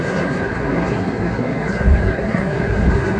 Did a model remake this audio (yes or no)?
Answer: yes